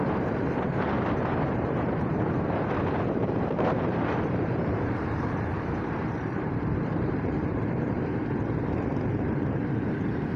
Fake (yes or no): yes